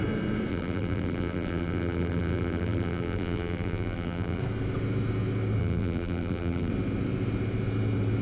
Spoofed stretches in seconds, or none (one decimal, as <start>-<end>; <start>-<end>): 0.5-4.4; 5.6-6.7